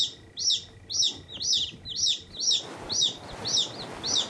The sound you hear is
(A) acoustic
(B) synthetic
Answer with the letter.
A